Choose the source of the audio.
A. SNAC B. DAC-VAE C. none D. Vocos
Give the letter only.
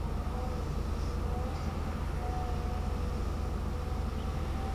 C